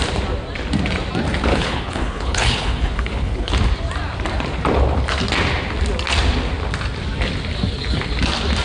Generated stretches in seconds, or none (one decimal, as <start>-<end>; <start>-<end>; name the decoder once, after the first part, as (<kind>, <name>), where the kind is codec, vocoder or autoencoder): 1.5-3.5 (codec, HILCodec)